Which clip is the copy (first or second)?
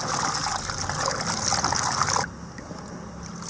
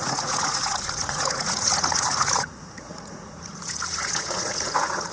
second